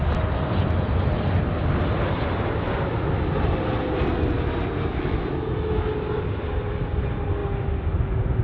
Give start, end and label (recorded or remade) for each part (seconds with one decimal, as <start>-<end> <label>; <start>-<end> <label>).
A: 0.0-4.9 recorded; 4.9-5.9 remade; 5.9-8.4 recorded